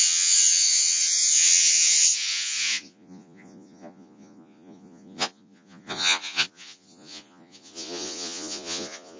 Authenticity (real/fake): fake